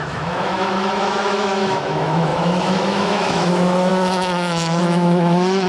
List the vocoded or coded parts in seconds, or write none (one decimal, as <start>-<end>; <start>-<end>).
0.0-5.7